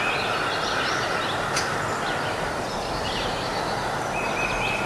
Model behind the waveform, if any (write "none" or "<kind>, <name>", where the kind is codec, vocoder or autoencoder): none